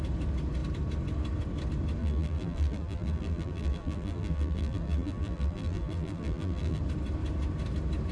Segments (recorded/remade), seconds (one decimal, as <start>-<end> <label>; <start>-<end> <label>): 0.0-2.0 recorded; 2.0-6.8 remade; 6.8-8.1 recorded